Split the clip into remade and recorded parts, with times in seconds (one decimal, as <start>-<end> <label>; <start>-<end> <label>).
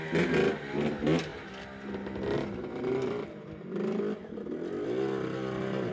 0.0-5.9 recorded